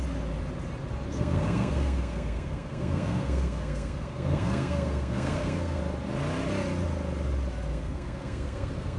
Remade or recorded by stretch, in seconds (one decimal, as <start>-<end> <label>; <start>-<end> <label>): 0.0-1.1 recorded; 1.1-5.8 remade; 5.8-7.7 recorded; 7.7-9.0 remade